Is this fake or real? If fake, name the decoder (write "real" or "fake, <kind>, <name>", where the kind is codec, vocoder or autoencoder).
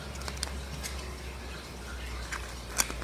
real